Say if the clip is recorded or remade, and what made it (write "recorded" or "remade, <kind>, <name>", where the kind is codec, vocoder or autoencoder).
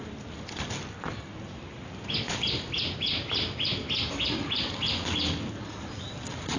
recorded